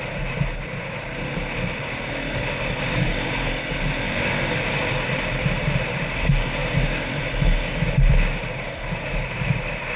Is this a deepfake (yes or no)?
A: no